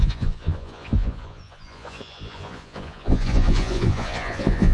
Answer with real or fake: fake